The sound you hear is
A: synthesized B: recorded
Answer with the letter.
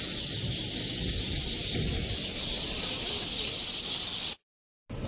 B